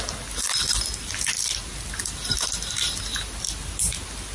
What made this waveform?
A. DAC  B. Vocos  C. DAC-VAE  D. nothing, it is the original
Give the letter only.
D